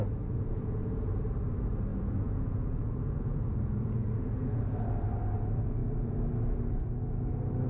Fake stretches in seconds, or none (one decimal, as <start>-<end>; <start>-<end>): 0.0-1.2; 1.9-4.6